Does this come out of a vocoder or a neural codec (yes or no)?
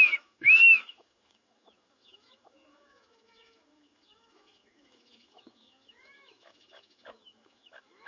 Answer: yes